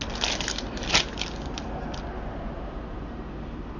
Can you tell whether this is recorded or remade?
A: recorded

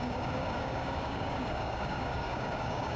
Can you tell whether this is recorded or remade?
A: remade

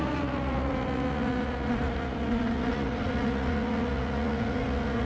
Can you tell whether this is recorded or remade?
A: remade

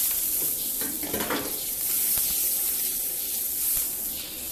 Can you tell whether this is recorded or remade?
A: recorded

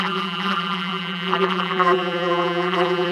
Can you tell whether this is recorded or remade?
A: remade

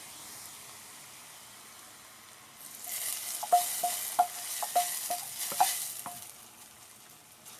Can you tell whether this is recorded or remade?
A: recorded